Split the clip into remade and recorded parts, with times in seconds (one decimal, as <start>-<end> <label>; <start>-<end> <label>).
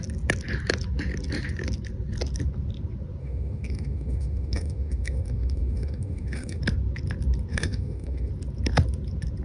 0.0-3.2 recorded; 3.2-6.6 remade; 6.6-7.5 recorded; 7.5-8.3 remade; 8.3-9.4 recorded